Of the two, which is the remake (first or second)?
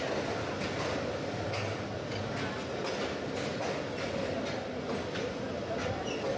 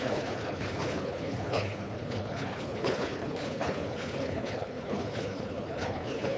second